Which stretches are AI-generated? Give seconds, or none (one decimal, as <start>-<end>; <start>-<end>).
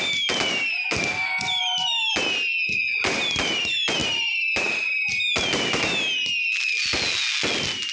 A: none